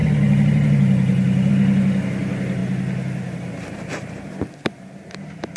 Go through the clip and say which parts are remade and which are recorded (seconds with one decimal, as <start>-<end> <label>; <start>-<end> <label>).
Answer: 0.0-5.6 recorded